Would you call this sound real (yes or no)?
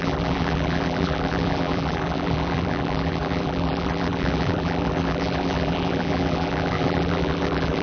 no